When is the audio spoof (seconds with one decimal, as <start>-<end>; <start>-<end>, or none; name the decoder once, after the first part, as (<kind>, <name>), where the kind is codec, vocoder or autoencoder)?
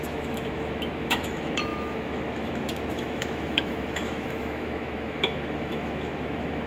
0.0-6.7 (autoencoder, DAC-VAE)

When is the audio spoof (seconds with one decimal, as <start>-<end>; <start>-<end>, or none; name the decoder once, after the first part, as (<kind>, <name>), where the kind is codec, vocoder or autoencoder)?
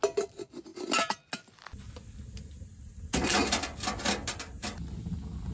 none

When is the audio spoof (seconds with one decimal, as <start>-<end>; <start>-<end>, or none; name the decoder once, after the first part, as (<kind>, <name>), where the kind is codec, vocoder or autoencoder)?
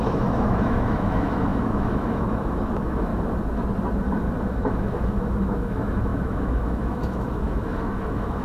0.0-3.1 (autoencoder, DAC-VAE); 4.4-8.4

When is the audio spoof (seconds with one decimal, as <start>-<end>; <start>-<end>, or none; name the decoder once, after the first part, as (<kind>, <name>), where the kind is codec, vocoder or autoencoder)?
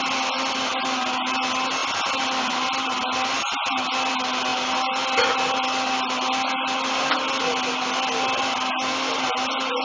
none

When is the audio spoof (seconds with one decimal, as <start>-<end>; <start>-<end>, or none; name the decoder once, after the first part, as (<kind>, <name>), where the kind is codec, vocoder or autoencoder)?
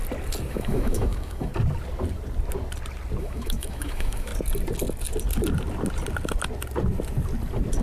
0.5-1.5 (autoencoder, DAC-VAE); 3.2-4.3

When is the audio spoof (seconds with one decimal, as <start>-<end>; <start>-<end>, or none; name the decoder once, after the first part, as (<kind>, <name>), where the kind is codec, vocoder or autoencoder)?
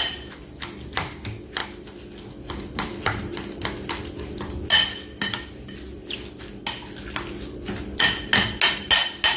none